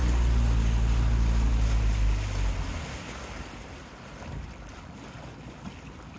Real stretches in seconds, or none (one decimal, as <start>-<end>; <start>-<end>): 0.0-6.2